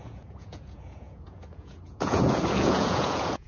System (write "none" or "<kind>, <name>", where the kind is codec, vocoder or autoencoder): vocoder, Vocos